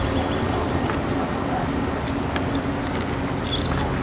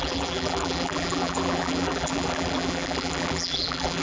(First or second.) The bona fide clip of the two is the first